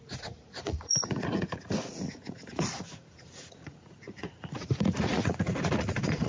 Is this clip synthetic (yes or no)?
yes